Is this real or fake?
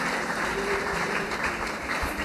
fake